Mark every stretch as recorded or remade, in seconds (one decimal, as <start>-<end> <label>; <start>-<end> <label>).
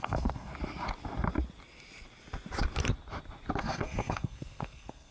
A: 0.0-0.5 remade; 0.5-3.6 recorded; 3.6-5.1 remade